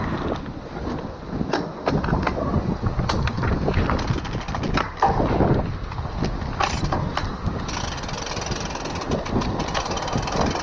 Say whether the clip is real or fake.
real